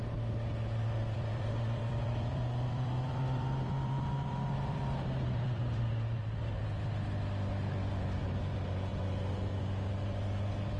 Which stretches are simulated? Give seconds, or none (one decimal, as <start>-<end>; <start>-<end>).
0.8-5.8